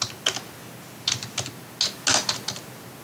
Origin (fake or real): real